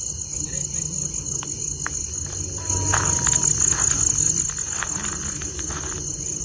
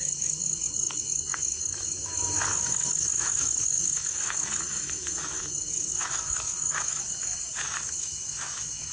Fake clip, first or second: second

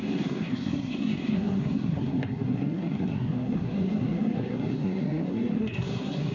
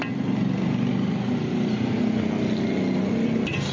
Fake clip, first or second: first